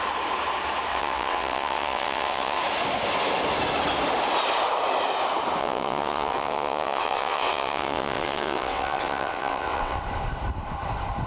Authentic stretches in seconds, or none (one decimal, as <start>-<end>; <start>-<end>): 0.0-0.9; 2.6-5.6; 10.0-11.3